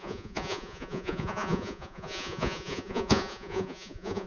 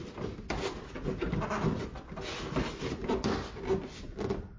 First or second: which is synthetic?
first